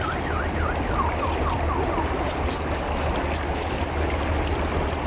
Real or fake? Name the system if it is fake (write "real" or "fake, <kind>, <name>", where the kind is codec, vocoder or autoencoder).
real